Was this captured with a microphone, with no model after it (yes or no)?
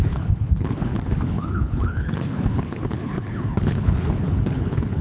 no